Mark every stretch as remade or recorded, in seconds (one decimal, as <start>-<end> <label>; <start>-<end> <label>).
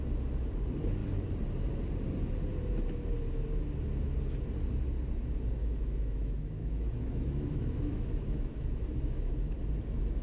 0.0-5.6 recorded; 5.6-9.6 remade; 9.6-10.2 recorded